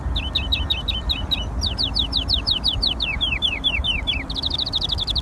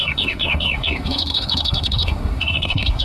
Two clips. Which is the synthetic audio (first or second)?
second